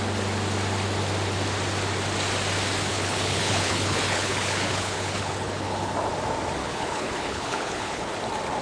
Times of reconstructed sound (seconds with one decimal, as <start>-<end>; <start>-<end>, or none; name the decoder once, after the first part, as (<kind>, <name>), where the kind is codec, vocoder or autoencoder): 2.9-5.9 (codec, HILCodec); 6.6-8.1